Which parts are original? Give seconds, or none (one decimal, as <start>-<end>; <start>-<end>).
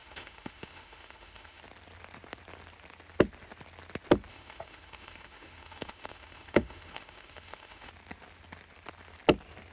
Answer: 1.6-4.3; 7.9-9.7